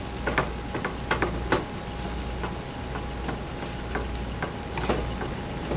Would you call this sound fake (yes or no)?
no